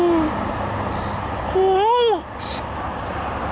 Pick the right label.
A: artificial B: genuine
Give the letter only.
B